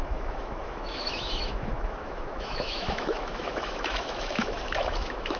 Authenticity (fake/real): fake